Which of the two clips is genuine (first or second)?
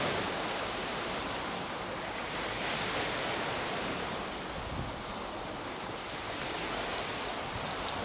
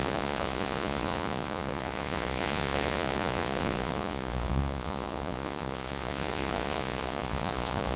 first